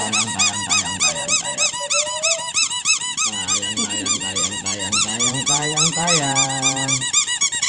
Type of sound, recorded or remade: remade